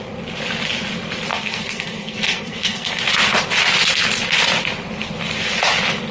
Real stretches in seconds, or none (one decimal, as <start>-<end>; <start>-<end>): 0.0-1.3; 3.0-6.1

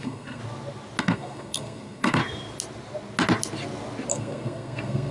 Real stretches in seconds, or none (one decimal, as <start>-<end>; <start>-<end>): 0.4-1.0; 2.2-4.1